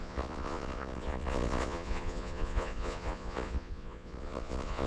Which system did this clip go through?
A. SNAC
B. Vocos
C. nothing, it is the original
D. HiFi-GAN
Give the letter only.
B